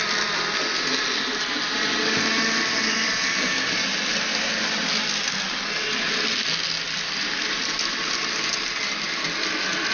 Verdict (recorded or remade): recorded